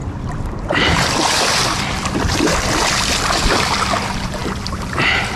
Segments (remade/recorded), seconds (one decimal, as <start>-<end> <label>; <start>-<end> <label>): 0.0-2.7 remade; 2.7-5.4 recorded

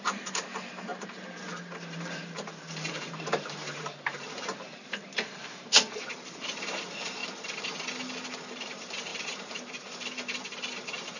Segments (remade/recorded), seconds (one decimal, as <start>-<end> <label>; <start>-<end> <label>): 0.0-7.2 remade; 7.2-8.5 recorded; 8.5-11.2 remade